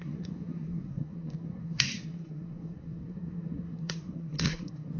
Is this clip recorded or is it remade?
remade